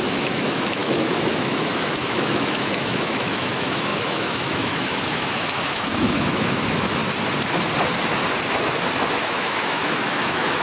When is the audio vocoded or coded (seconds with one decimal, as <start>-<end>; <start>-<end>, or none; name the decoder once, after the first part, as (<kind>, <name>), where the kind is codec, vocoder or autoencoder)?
0.0-7.0 (autoencoder, DAC-VAE); 9.2-10.6

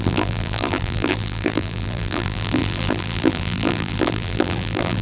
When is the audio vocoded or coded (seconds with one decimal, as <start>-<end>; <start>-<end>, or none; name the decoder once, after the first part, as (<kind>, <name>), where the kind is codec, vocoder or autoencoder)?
0.0-5.0 (vocoder, BigVGAN v2)

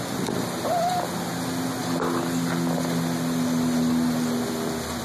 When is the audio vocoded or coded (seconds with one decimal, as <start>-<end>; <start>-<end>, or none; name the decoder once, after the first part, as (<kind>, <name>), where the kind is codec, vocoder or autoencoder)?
none

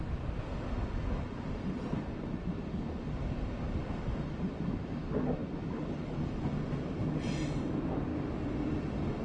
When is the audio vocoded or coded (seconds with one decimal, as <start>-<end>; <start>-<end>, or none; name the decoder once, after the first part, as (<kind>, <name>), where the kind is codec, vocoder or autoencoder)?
none

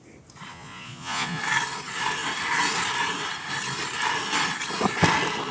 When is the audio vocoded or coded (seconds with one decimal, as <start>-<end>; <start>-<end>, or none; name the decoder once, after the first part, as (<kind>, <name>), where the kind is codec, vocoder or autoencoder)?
0.5-1.4 (vocoder, Vocos)